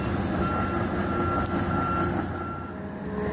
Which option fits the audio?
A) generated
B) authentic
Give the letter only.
B